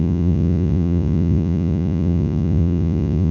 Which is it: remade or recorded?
remade